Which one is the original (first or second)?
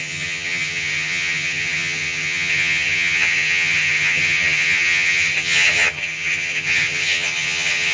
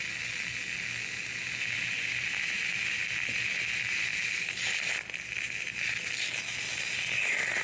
second